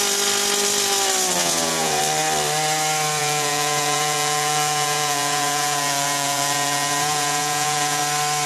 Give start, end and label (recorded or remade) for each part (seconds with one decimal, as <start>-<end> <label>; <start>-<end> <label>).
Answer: 0.0-1.4 recorded; 1.4-2.0 remade; 2.0-3.2 recorded; 3.2-8.0 remade; 8.0-8.5 recorded